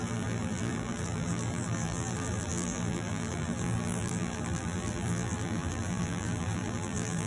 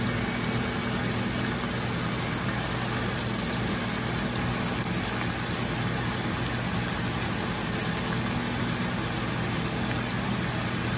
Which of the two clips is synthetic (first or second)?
first